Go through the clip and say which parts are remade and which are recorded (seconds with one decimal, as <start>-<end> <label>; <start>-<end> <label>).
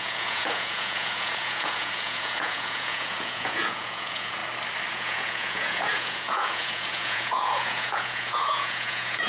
0.0-4.4 remade; 4.4-4.9 recorded; 4.9-9.3 remade